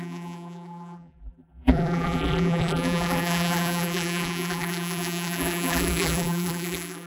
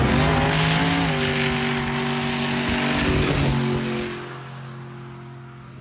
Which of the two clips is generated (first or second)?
first